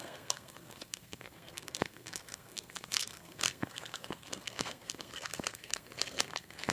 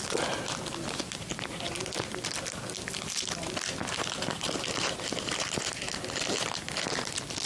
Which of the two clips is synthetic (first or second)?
first